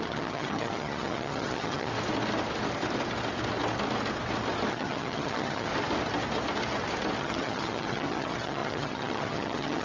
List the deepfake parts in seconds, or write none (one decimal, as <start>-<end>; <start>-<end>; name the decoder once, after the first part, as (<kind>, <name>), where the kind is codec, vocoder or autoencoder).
0.0-1.9 (vocoder, HiFi-GAN); 4.7-5.7; 7.2-9.8